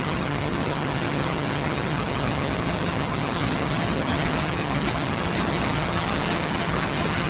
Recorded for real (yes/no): no